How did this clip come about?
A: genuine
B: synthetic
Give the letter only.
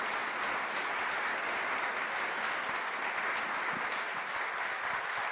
A